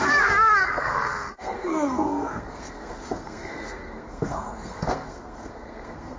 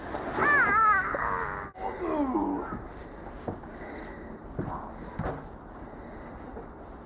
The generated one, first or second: first